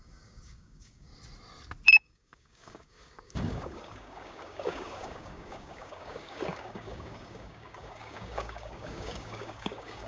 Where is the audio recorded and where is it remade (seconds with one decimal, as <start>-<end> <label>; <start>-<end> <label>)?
0.0-1.1 remade; 1.1-1.9 recorded; 1.9-10.1 remade